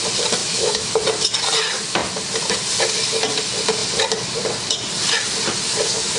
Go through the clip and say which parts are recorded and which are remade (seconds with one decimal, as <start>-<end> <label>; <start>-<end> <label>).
0.0-0.4 recorded; 0.4-0.9 remade; 0.9-6.2 recorded